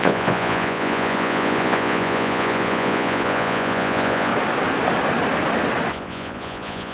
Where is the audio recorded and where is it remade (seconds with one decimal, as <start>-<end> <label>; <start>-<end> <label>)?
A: 0.0-4.3 remade; 4.3-5.9 recorded; 5.9-6.9 remade